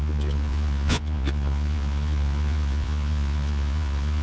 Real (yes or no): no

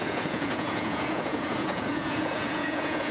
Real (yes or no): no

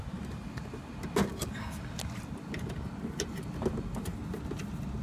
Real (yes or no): yes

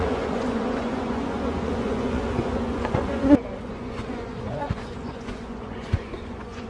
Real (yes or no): no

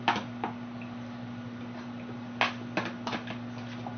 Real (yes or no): yes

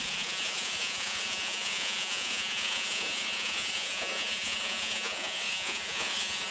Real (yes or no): no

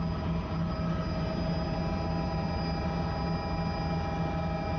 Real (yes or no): yes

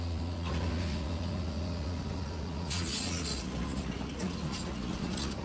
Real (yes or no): no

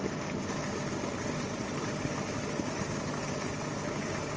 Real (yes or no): yes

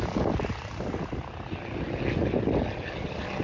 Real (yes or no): yes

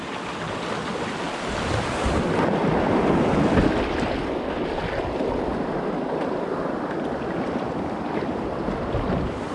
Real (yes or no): yes